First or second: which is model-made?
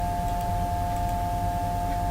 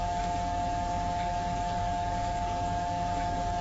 second